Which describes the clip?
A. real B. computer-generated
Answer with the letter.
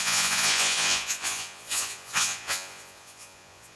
B